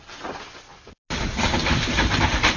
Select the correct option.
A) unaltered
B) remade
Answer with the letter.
A